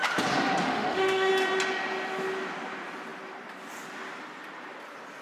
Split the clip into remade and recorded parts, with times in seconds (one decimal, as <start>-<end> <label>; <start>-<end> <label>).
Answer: 0.0-0.6 recorded; 0.6-1.3 remade; 1.3-5.2 recorded